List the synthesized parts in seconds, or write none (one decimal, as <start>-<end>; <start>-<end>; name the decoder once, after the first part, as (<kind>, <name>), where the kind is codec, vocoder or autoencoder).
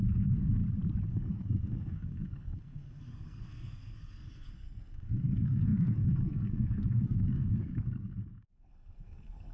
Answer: 0.0-0.6 (codec, SNAC); 1.1-9.5